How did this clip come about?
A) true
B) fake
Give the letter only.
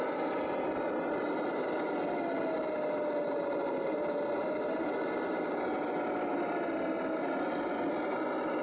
A